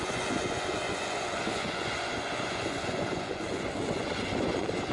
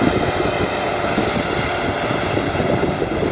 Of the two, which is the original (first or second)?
second